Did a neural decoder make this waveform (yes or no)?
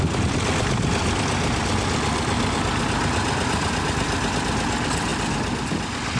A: no